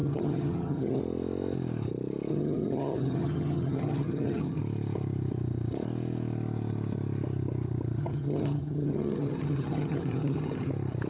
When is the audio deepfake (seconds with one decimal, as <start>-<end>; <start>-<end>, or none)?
0.0-1.0; 2.3-4.6; 8.0-10.7